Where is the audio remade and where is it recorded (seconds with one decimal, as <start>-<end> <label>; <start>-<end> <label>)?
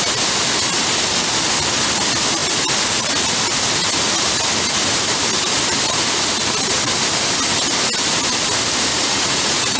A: 0.0-8.9 recorded; 8.9-9.8 remade